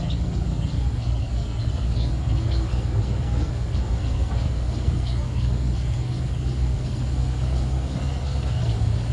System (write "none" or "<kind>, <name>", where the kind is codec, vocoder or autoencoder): codec, SNAC